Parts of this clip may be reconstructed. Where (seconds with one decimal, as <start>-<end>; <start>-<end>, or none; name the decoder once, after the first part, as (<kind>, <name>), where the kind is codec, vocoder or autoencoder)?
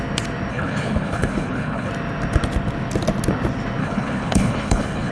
0.5-1.9 (codec, HILCodec); 3.8-5.1